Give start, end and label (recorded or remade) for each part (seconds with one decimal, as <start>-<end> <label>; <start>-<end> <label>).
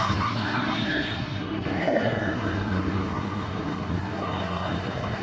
0.0-5.2 remade